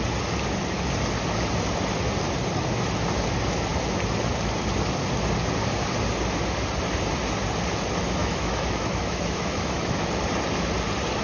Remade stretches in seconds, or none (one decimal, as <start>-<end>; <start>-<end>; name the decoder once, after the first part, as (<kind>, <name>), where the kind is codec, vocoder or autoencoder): 8.2-10.2 (autoencoder, DAC-VAE)